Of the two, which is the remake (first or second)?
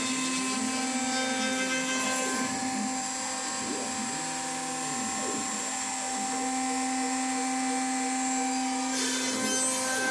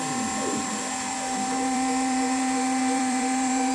second